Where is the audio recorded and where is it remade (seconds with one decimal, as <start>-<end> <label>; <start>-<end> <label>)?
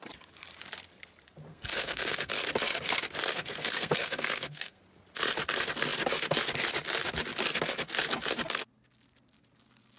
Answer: 0.0-1.5 recorded; 1.5-2.3 remade; 2.3-3.3 recorded; 3.3-4.8 remade; 4.8-10.0 recorded